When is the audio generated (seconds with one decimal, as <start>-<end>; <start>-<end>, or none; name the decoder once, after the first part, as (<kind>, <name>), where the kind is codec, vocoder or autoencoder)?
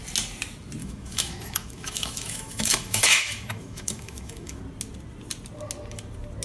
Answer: 0.8-4.6 (autoencoder, DAC-VAE)